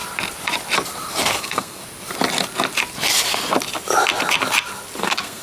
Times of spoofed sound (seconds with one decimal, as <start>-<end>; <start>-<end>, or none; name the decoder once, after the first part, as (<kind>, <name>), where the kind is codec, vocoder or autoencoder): 1.4-1.8 (codec, SNAC); 5.0-5.4